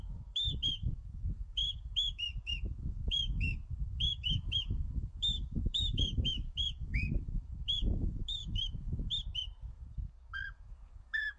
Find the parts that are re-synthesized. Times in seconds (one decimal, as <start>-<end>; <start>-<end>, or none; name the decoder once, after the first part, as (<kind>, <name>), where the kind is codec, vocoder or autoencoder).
0.0-9.1 (codec, DAC); 9.7-11.4